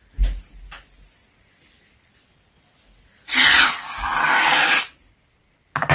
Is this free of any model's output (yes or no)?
yes